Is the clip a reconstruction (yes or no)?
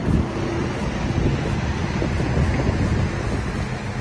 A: no